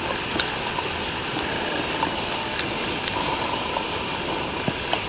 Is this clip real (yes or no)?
yes